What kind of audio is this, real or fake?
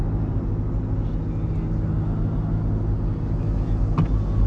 real